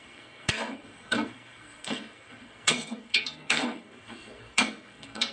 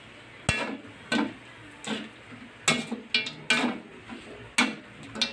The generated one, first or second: first